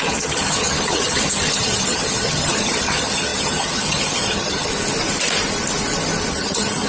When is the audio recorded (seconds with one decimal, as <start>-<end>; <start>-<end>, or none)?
4.7-6.3